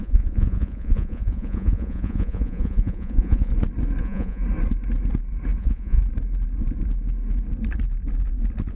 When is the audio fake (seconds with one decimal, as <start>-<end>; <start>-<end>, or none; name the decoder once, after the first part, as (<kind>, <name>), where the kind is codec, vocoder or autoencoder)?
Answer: 0.0-3.5 (vocoder, Vocos); 4.0-4.4; 5.6-6.0